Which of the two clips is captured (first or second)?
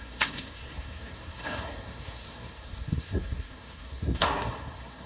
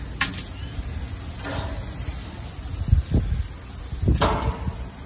second